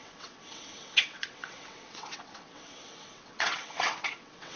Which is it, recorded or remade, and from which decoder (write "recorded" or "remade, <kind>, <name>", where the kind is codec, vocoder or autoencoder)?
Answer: remade, vocoder, WaveNeXt